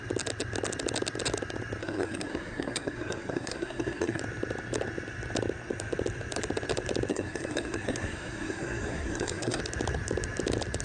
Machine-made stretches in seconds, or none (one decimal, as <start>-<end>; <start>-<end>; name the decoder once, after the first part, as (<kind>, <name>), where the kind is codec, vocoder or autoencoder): 1.8-4.2 (codec, SNAC); 7.1-9.6